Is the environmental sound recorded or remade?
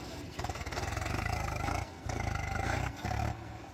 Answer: remade